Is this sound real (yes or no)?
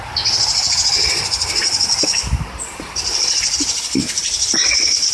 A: yes